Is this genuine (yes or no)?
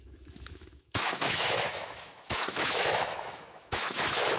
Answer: no